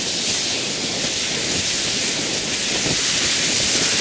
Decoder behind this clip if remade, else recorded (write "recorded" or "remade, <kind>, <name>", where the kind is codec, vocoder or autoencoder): recorded